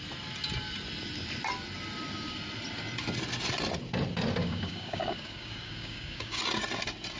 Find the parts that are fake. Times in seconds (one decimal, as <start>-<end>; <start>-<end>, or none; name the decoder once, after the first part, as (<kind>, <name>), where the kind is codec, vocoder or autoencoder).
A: 4.4-6.4 (codec, DAC)